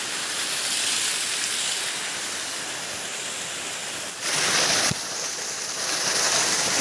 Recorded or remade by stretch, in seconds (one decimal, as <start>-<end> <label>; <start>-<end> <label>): 0.0-6.8 recorded